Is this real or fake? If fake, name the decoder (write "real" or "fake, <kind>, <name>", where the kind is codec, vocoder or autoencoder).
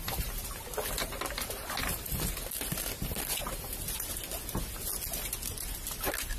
real